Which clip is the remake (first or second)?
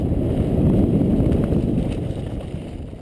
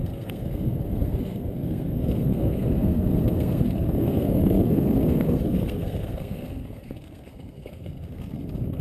second